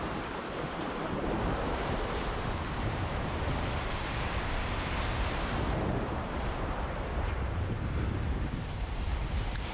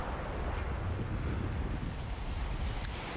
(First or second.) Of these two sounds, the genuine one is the second